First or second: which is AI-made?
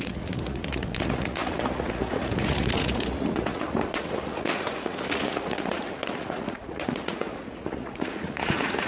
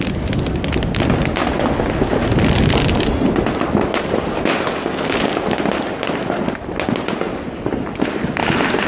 first